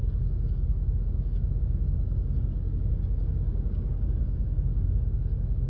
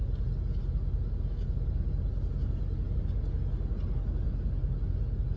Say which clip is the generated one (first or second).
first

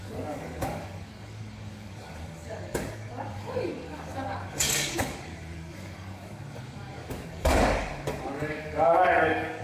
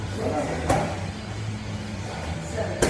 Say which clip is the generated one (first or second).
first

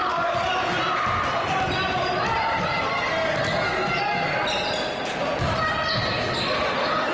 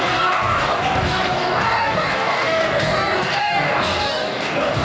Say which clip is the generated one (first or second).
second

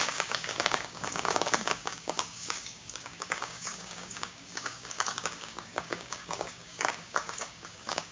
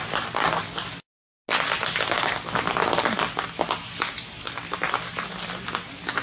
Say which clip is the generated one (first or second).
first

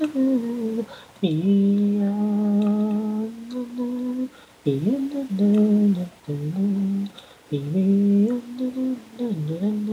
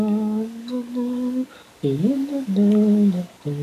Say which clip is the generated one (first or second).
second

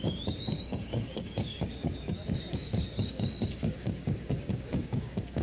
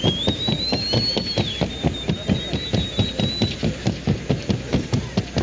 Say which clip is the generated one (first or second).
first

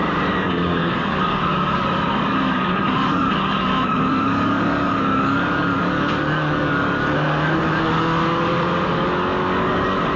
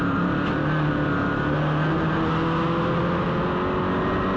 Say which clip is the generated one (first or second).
first